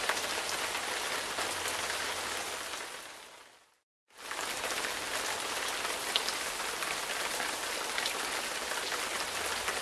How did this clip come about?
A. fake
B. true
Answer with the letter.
B